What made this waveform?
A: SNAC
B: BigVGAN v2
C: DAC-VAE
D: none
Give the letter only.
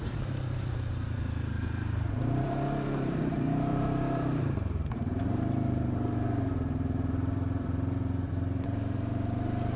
B